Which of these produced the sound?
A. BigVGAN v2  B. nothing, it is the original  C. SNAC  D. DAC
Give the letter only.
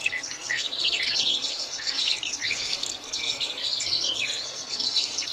C